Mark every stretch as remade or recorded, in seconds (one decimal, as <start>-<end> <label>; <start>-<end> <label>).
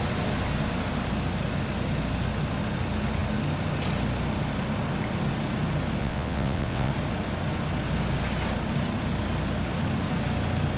0.0-6.0 recorded; 6.0-6.9 remade; 6.9-10.8 recorded